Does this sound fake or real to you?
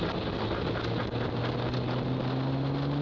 real